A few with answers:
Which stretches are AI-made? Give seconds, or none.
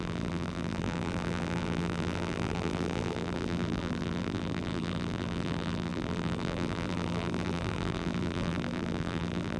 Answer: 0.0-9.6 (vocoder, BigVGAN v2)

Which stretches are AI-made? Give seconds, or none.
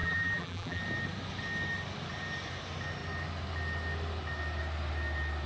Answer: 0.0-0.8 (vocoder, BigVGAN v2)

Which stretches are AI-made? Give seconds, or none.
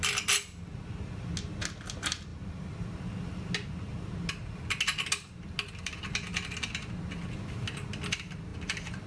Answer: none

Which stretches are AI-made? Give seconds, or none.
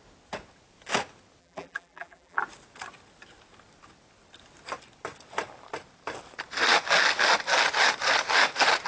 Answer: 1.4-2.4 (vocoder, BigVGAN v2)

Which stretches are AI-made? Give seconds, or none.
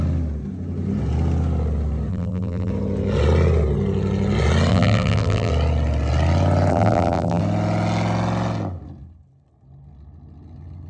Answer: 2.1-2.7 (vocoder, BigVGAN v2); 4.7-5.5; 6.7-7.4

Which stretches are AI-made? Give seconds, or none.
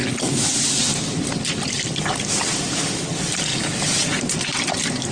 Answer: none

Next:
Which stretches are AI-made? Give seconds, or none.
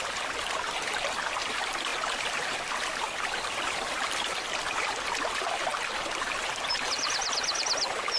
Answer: none